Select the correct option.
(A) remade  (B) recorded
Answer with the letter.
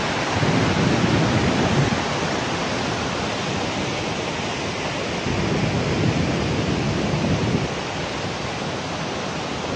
B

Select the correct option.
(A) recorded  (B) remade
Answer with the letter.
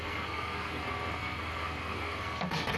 B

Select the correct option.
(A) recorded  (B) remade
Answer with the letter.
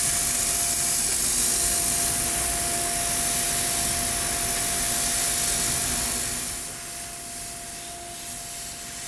A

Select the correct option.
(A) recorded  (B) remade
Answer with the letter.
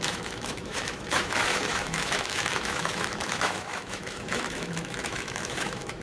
B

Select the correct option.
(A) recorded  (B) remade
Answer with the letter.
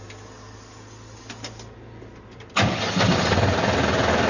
A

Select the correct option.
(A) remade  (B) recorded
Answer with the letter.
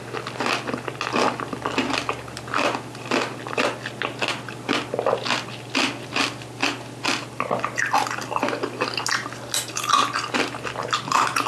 B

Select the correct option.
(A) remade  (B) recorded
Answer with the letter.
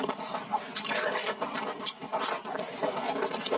B